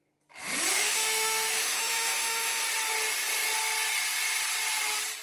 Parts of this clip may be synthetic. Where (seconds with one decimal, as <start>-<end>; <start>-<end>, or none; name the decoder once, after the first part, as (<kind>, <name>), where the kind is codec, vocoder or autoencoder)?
0.7-2.6 (autoencoder, DAC-VAE)